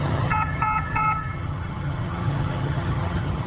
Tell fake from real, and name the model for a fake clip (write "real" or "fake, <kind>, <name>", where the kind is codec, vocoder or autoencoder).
fake, vocoder, HiFi-GAN